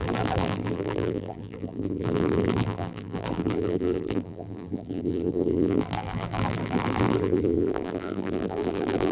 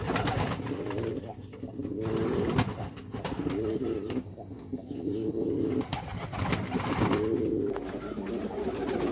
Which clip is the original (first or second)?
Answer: second